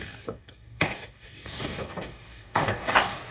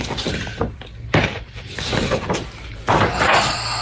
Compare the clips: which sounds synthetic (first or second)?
first